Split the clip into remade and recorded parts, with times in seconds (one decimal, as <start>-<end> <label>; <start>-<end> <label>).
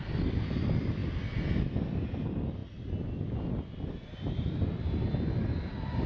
0.0-1.0 remade; 1.0-1.6 recorded; 1.6-6.1 remade